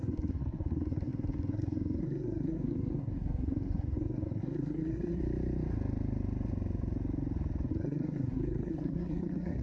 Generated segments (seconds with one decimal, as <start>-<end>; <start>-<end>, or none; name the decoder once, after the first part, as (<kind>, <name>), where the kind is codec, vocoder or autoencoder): 0.0-5.2 (codec, SNAC); 7.7-9.6